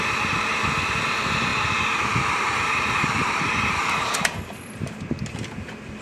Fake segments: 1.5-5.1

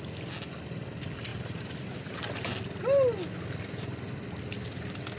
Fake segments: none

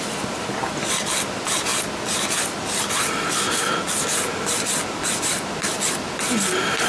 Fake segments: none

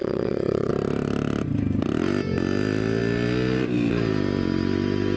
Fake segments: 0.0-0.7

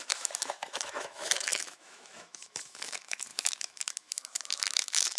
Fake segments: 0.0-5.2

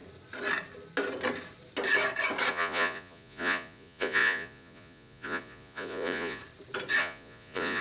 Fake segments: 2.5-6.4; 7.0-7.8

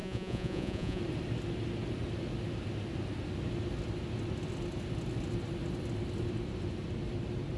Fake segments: 0.0-1.0

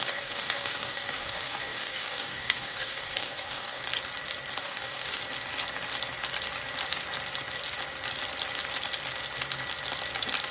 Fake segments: 0.0-3.8; 4.6-5.2